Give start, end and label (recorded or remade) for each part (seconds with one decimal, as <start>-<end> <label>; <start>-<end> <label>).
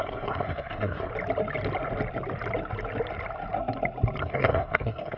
0.0-1.1 remade; 1.1-4.2 recorded; 4.2-5.2 remade